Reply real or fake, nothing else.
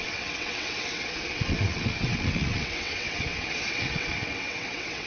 fake